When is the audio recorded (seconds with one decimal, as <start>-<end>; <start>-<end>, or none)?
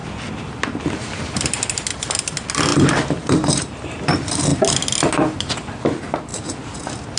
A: 0.0-7.2